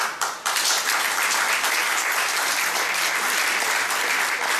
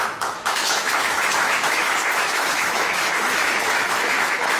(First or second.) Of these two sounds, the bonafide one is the first